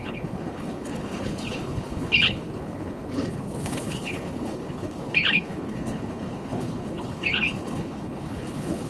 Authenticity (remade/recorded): remade